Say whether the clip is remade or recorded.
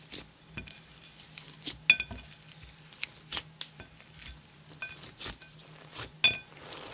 recorded